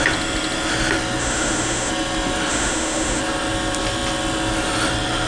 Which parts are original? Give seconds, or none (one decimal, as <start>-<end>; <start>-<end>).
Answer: 0.0-1.2; 1.9-2.5; 3.2-5.3